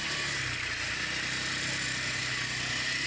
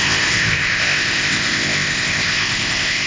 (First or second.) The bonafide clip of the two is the first